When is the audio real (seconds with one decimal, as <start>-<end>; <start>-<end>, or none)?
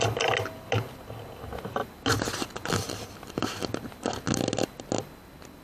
0.0-5.6